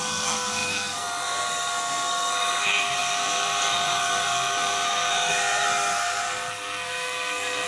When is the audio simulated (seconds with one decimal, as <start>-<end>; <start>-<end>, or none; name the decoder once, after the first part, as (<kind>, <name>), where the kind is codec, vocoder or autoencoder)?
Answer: 0.0-7.7 (codec, SNAC)